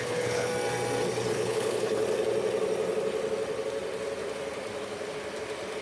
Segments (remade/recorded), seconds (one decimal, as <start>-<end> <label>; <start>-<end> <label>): 0.0-0.5 remade; 0.5-1.3 recorded; 1.3-2.0 remade; 2.0-5.8 recorded

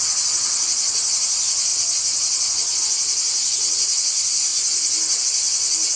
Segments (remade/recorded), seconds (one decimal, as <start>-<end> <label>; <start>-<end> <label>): 0.0-6.0 recorded

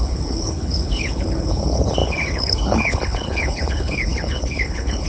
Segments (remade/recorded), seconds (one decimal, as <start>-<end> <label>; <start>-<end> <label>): 0.0-5.1 remade

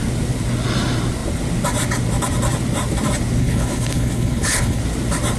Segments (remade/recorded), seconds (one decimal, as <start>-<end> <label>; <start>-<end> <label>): 0.0-3.4 recorded; 3.4-4.8 remade; 4.8-5.4 recorded

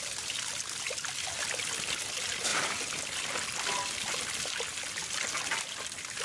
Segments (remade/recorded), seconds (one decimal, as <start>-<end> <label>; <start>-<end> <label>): 0.0-6.2 recorded

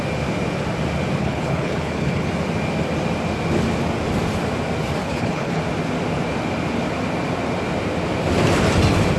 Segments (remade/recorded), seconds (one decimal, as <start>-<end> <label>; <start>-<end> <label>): 0.0-1.2 recorded; 1.2-2.3 remade; 2.3-5.0 recorded; 5.0-5.6 remade; 5.6-9.2 recorded

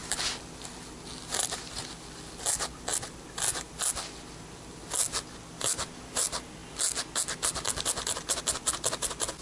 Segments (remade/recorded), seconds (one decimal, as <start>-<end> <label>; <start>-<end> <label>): 0.0-9.4 recorded